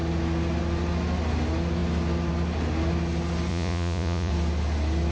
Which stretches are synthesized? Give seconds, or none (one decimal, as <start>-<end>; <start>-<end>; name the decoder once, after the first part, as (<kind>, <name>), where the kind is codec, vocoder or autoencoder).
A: 3.5-4.3 (vocoder, Vocos)

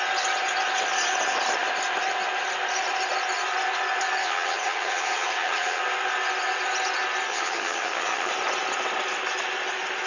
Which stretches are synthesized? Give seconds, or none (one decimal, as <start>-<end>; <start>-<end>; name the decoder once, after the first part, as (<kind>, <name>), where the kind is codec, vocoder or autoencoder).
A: 4.2-5.8 (vocoder, HiFi-GAN); 7.3-8.3

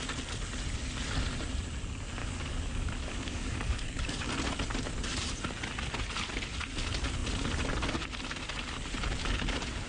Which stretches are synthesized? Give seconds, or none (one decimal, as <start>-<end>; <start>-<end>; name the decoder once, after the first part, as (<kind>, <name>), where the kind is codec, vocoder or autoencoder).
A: 2.2-4.3 (codec, DAC)